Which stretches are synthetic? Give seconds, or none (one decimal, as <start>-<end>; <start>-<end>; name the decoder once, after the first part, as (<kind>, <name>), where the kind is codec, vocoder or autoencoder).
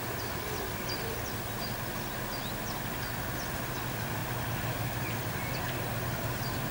none